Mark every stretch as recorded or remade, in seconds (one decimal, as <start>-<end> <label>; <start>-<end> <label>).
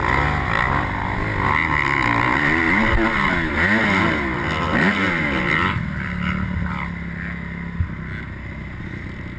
0.0-9.4 recorded